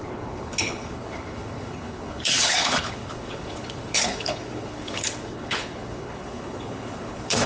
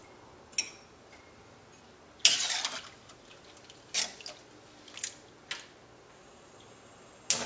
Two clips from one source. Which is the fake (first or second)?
first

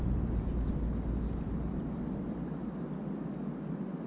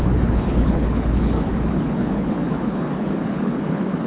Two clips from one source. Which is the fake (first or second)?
second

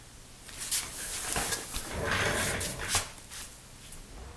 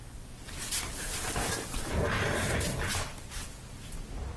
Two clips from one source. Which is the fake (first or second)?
second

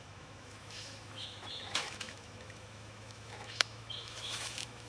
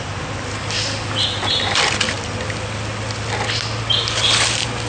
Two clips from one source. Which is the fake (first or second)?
first